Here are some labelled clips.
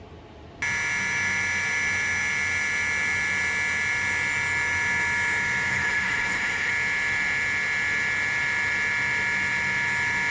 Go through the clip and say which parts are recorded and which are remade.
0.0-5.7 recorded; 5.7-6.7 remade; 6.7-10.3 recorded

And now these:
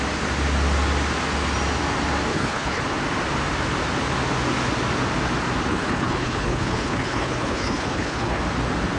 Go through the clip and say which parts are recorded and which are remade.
0.0-2.3 recorded; 2.3-2.8 remade; 2.8-5.7 recorded; 5.7-8.4 remade; 8.4-9.0 recorded

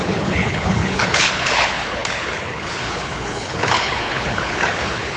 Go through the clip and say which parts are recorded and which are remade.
0.0-5.2 remade

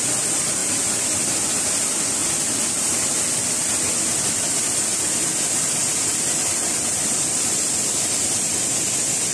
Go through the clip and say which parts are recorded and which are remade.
0.0-9.3 recorded

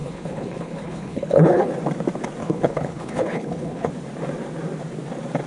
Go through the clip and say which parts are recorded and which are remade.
0.0-1.7 remade; 1.7-2.4 recorded; 2.4-3.9 remade; 3.9-5.5 recorded

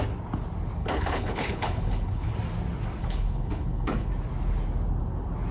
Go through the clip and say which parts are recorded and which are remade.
0.0-0.8 recorded; 0.8-2.3 remade; 2.3-3.0 recorded; 3.0-4.1 remade; 4.1-5.5 recorded